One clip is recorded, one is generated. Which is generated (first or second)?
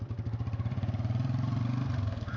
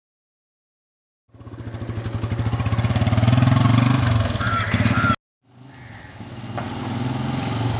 first